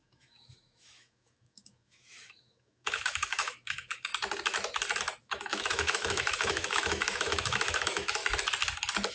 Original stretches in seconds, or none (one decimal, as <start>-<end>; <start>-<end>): 4.1-5.2; 8.2-9.1